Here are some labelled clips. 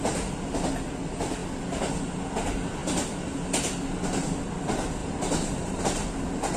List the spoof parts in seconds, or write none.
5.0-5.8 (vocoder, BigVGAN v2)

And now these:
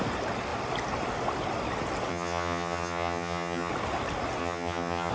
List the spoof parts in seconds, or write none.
2.1-3.7 (vocoder, HiFi-GAN); 4.4-5.1

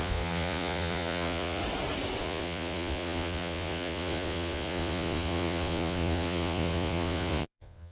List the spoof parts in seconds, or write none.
0.0-1.6 (vocoder, Vocos); 2.2-7.9

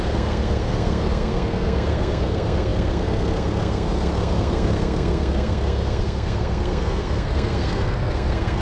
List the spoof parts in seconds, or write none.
0.0-8.6 (codec, SNAC)